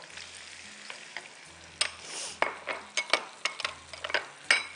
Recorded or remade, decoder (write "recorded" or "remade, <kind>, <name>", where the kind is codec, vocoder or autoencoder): recorded